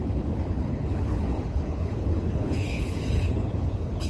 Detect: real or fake fake